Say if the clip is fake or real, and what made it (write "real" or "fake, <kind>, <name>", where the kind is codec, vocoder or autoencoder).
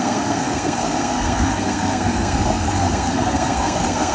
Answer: fake, codec, SNAC